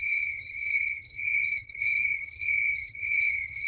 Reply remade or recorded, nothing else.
remade